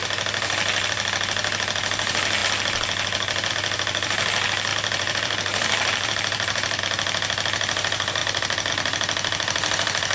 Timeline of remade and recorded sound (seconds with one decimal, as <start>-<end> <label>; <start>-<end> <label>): 0.0-4.7 recorded; 4.7-6.8 remade; 6.8-8.2 recorded; 8.2-8.7 remade; 8.7-10.1 recorded